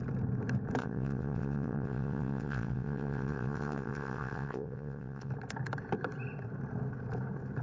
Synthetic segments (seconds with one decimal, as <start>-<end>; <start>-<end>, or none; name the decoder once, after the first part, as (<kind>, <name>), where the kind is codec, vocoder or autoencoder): 0.8-5.3 (vocoder, WaveNeXt)